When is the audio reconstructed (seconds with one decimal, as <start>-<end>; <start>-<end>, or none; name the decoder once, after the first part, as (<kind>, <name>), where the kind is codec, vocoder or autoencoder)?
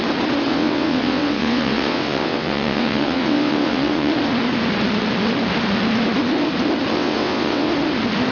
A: 0.5-4.1 (vocoder, WaveNeXt); 6.9-7.7